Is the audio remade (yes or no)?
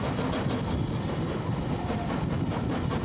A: no